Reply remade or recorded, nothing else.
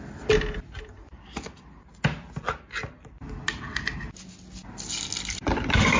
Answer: recorded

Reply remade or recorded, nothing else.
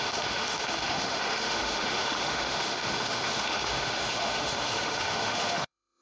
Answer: remade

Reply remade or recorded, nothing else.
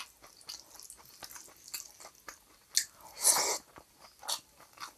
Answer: recorded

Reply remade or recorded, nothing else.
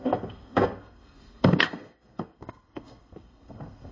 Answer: remade